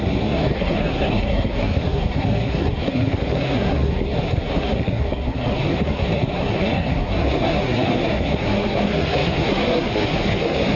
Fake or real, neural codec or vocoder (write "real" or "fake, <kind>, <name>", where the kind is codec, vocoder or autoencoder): fake, codec, SNAC